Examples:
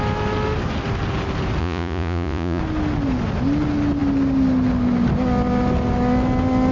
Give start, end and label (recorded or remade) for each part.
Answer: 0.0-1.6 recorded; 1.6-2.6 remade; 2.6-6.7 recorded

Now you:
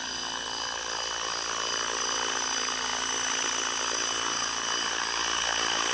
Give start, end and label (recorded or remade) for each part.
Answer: 0.0-5.9 recorded

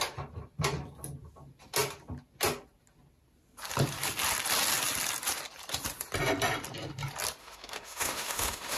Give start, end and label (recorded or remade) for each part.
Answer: 0.0-7.4 recorded; 7.4-8.8 remade